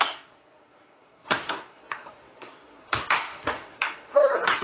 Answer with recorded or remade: remade